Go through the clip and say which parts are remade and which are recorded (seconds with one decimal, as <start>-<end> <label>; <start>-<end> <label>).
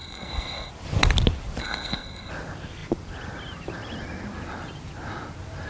0.0-0.7 remade; 0.7-1.6 recorded; 1.6-2.3 remade; 2.3-5.7 recorded